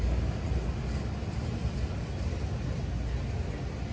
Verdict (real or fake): real